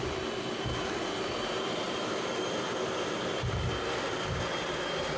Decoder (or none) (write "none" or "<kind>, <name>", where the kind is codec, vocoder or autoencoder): vocoder, BigVGAN v2